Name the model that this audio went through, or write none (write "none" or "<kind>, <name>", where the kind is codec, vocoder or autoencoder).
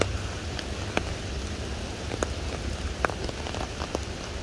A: none